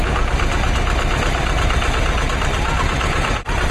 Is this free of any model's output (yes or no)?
yes